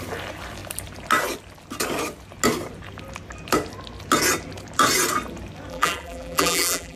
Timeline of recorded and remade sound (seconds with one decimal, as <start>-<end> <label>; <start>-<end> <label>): 0.0-5.7 recorded; 5.7-7.0 remade